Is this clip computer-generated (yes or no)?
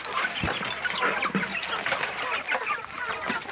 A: no